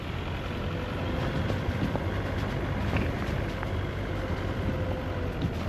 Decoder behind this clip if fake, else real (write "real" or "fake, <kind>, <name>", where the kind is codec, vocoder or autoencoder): real